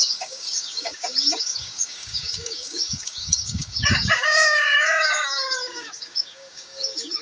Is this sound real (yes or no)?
no